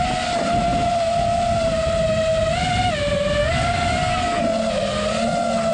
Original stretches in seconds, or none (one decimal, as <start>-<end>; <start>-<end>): 0.0-3.4; 4.4-5.7